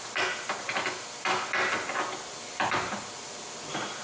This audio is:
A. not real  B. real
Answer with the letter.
B